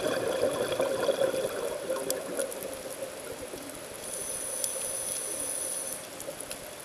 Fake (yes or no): no